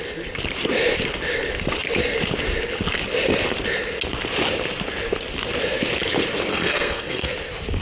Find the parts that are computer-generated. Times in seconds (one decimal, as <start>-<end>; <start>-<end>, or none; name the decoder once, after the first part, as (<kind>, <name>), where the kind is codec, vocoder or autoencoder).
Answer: 6.5-7.3 (codec, SNAC)